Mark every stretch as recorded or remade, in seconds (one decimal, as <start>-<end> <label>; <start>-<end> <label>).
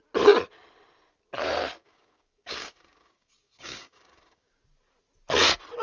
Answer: 0.0-1.8 recorded; 1.8-4.5 remade; 4.5-5.8 recorded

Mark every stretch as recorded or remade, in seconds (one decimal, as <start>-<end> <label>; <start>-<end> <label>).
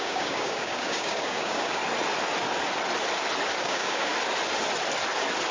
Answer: 0.0-1.8 remade; 1.8-3.6 recorded; 3.6-4.1 remade; 4.1-5.5 recorded